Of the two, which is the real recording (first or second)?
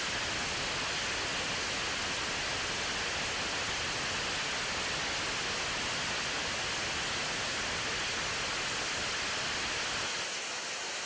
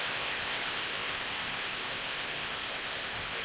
first